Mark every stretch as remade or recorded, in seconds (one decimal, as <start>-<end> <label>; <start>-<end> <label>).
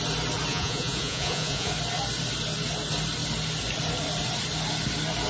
0.0-0.5 recorded; 0.5-1.7 remade; 1.7-5.3 recorded